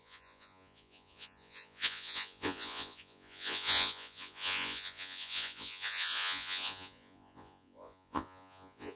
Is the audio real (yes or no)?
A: no